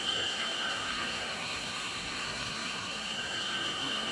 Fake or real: fake